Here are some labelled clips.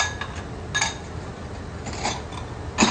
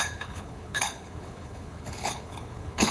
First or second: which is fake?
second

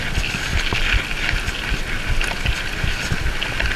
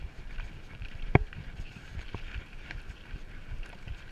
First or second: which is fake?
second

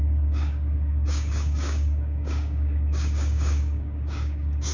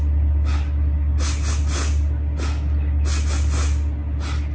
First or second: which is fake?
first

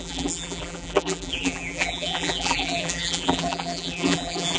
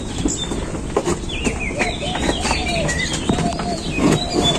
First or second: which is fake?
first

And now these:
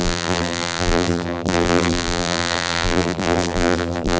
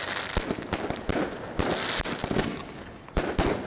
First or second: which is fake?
first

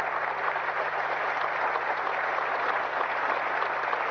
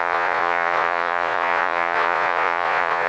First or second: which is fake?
second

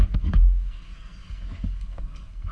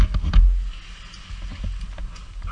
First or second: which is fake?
first